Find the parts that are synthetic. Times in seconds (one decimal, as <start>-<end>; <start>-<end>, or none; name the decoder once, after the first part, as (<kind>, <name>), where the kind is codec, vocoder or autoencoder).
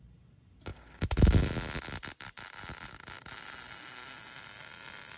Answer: none